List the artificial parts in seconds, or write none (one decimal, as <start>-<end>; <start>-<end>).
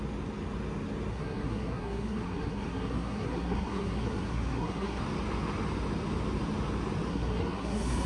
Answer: 1.1-5.0; 7.1-8.1